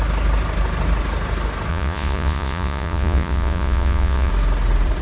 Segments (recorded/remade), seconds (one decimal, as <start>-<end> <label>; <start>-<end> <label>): 0.0-1.7 recorded; 1.7-4.3 remade; 4.3-5.0 recorded